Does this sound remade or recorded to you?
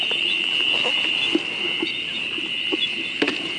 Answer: remade